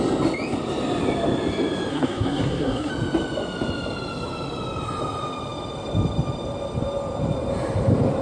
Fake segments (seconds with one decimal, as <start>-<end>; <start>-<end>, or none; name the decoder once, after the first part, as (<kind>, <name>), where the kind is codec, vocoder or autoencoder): 1.9-2.9 (codec, SNAC)